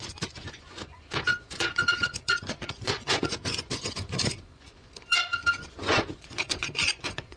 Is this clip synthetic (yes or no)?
yes